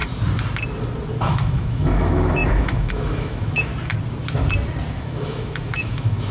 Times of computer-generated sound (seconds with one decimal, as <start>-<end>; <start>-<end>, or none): 1.3-3.7; 4.9-6.3